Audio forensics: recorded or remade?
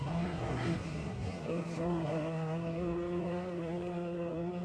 remade